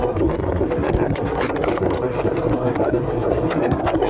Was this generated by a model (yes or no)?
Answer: yes